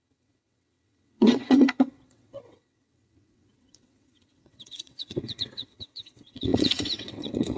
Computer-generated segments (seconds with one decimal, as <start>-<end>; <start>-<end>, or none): 0.0-7.6